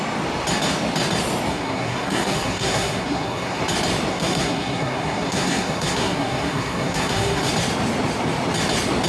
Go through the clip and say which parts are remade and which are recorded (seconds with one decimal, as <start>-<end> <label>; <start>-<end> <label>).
0.0-1.5 recorded; 1.5-3.6 remade; 3.6-4.1 recorded; 4.1-7.5 remade; 7.5-9.1 recorded